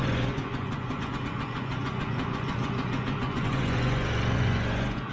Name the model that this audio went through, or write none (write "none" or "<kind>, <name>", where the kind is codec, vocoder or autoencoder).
vocoder, Vocos